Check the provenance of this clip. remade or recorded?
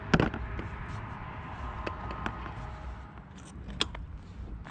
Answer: recorded